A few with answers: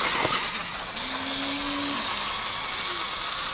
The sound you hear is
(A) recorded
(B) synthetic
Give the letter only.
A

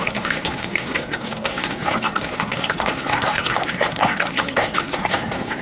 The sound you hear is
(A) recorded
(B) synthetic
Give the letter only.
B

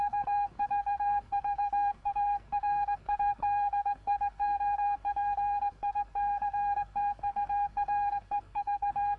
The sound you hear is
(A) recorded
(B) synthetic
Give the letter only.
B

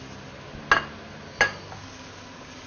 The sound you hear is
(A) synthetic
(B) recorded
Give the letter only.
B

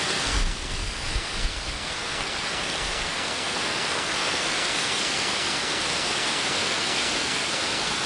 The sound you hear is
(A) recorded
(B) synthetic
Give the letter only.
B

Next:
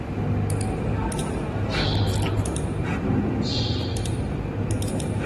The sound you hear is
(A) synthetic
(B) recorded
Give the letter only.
B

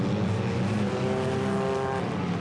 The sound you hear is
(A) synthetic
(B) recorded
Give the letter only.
B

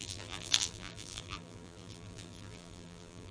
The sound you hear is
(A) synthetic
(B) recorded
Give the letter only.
A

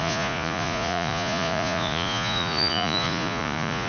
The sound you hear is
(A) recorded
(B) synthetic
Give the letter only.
B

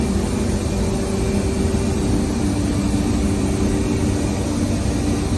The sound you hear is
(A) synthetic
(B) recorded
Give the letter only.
B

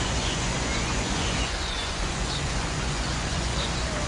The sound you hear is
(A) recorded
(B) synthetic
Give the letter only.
B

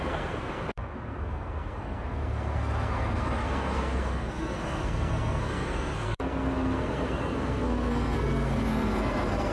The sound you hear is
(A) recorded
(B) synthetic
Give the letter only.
B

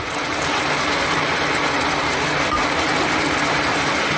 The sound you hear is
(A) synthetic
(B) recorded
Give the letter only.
B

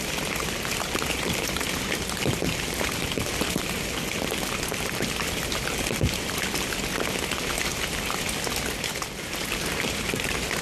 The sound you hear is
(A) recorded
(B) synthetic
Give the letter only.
A